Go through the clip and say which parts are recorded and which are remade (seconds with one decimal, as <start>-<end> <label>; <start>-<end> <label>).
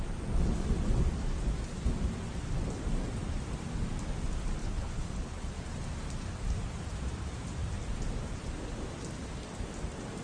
0.0-4.6 recorded; 4.6-5.5 remade; 5.5-10.2 recorded